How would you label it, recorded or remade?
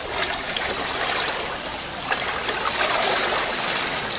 recorded